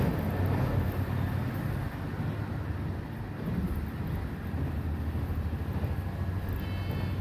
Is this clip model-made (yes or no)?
no